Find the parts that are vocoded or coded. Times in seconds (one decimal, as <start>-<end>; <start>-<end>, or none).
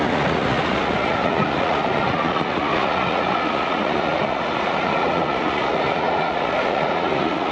0.0-7.5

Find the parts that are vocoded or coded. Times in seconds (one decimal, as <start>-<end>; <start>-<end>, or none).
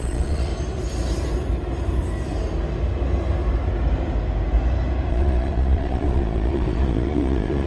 0.0-0.5; 5.1-7.7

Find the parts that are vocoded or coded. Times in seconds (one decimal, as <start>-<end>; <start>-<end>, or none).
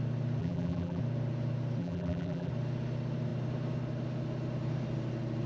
0.4-1.0; 1.8-2.5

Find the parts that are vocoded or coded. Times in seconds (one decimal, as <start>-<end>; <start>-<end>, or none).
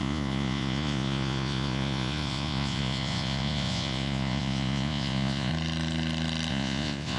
0.0-5.5; 6.5-7.2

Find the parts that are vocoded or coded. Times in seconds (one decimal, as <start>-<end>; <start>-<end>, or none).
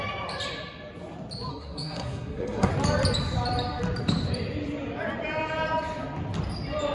1.5-2.7